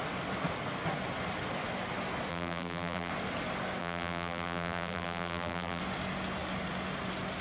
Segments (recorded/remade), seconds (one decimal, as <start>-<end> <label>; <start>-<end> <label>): 0.0-2.3 recorded; 2.3-3.1 remade; 3.1-3.8 recorded; 3.8-5.8 remade; 5.8-7.4 recorded